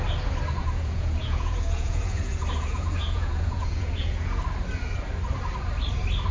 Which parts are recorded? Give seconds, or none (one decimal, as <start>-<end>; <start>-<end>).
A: 0.0-0.6; 4.4-6.3